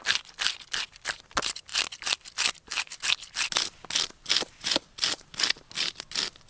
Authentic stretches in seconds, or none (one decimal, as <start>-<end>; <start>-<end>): 0.0-1.7; 2.5-6.5